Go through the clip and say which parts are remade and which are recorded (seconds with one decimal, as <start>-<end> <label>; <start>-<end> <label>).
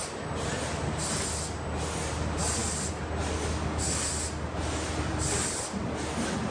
0.0-6.5 recorded